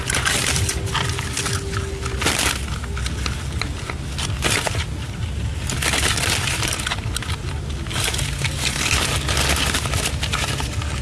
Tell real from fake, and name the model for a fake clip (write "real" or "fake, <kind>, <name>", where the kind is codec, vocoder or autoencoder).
real